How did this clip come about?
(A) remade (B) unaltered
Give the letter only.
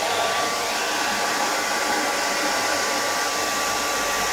B